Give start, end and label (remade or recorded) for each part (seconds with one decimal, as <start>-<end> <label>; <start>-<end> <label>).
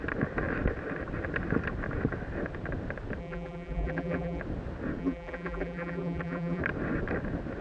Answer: 0.0-3.2 recorded; 3.2-4.4 remade; 4.4-5.0 recorded; 5.0-6.6 remade; 6.6-7.6 recorded